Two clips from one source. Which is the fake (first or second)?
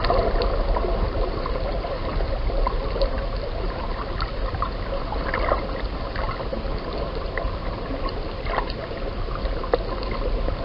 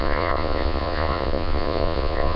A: second